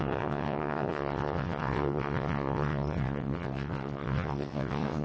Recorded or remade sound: remade